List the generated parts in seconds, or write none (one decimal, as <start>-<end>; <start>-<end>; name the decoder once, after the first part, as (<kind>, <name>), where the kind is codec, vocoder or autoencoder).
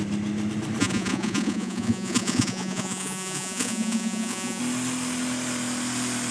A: 0.8-4.6 (vocoder, Vocos)